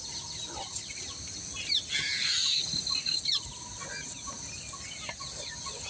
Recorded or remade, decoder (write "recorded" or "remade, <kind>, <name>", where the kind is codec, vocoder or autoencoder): recorded